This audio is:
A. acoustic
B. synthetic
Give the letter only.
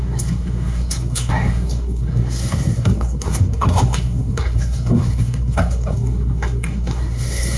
B